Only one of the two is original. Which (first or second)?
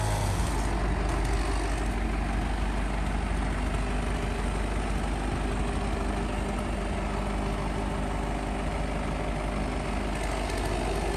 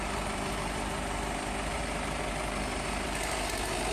first